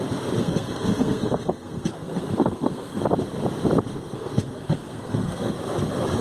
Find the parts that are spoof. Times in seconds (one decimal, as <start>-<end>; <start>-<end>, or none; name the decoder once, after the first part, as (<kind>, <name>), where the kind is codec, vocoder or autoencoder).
0.4-3.0 (codec, SNAC); 3.9-5.5